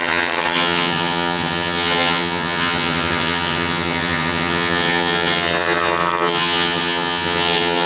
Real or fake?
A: fake